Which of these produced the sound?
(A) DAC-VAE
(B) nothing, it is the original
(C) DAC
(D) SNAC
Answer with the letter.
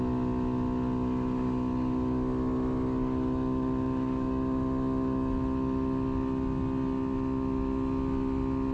B